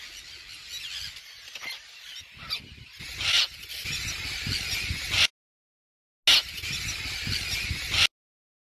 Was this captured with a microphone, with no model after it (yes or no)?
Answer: yes